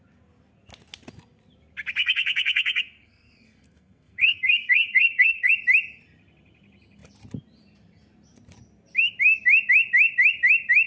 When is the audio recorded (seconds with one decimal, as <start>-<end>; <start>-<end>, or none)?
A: 0.0-2.0; 5.5-10.9